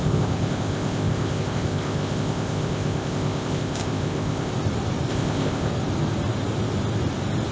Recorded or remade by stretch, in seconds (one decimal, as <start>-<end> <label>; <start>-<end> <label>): 0.0-4.5 remade; 4.5-5.1 recorded; 5.1-5.7 remade; 5.7-7.5 recorded